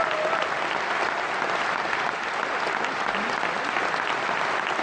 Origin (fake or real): real